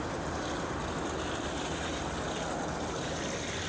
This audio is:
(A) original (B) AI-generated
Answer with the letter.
A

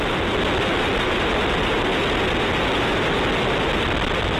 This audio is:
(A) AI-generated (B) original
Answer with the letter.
B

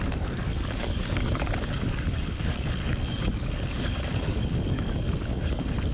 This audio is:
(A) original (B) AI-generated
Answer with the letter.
B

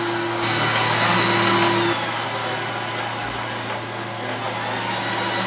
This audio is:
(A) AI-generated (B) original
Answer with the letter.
B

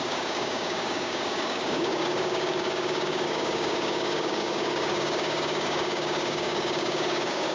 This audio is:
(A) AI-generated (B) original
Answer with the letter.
A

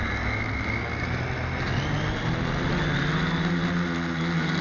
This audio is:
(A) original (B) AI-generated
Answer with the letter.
A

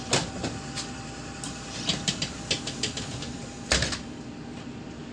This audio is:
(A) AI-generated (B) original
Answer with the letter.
B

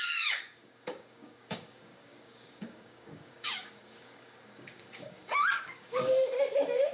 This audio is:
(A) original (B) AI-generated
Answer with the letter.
B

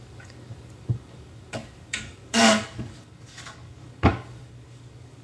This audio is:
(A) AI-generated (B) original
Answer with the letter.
A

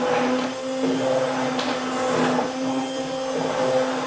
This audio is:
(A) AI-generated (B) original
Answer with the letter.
B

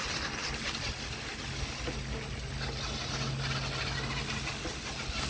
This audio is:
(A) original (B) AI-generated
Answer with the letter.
A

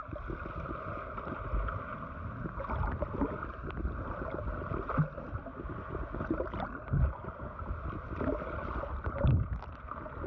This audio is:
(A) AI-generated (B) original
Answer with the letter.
B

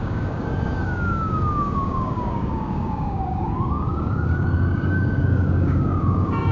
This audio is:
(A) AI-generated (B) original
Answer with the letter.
A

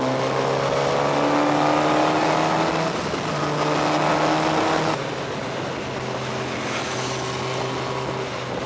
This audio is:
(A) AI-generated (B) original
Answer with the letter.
B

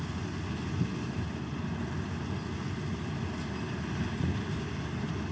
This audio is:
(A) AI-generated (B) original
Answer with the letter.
B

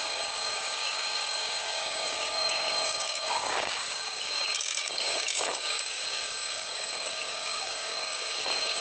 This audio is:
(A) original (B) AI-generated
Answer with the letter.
B